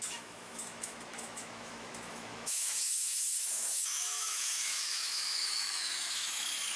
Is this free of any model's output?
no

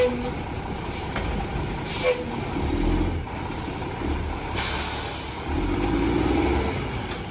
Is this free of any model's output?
yes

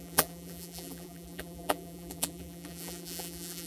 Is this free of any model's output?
no